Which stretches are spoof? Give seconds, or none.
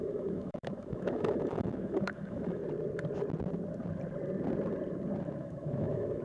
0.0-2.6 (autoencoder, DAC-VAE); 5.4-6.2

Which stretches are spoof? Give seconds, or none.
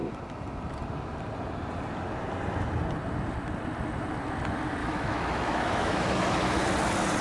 4.8-5.9 (autoencoder, DAC-VAE)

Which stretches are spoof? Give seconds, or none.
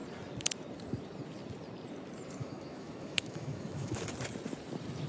2.4-4.1 (autoencoder, DAC-VAE)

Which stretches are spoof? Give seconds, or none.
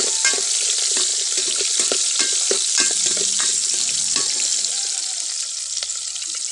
none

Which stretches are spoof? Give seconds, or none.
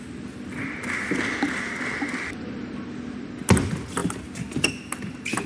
none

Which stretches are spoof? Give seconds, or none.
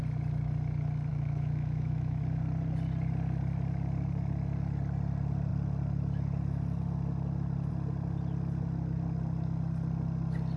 1.1-2.2 (autoencoder, DAC-VAE)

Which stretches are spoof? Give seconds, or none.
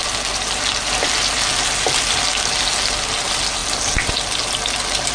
none